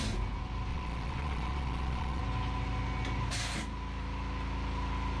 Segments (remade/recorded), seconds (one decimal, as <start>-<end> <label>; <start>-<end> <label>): 0.0-0.7 recorded; 0.7-2.2 remade; 2.2-5.2 recorded